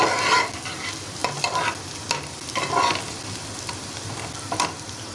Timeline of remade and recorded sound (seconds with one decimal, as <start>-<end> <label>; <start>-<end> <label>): 0.0-5.1 recorded